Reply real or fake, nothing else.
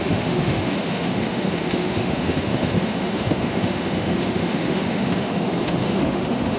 fake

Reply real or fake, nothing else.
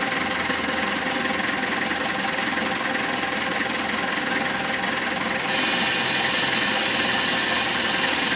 real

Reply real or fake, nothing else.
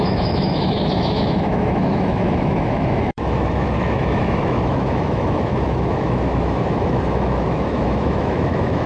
fake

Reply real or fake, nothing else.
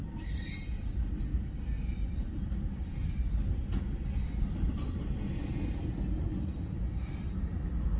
real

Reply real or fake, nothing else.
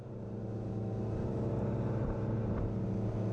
real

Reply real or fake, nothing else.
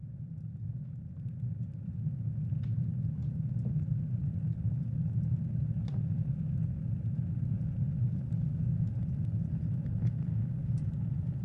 real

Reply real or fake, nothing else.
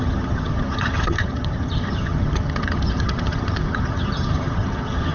fake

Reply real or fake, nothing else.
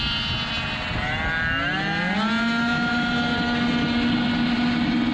real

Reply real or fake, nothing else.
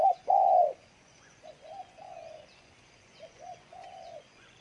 fake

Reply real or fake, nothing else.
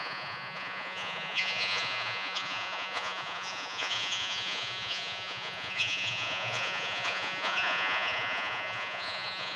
fake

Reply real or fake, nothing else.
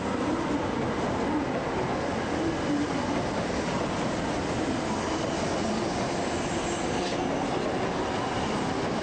real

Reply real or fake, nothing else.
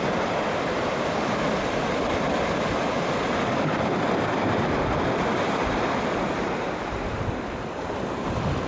real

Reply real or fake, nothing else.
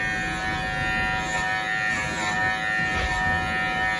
real